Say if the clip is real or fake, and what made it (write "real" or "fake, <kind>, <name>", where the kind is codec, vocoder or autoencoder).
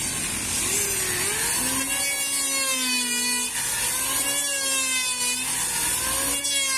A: real